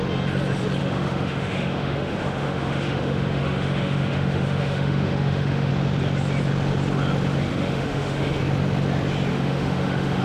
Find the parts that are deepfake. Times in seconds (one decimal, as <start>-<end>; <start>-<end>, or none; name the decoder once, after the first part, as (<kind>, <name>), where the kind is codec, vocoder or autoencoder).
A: 0.8-5.7 (autoencoder, DAC-VAE); 7.5-8.4; 9.3-10.2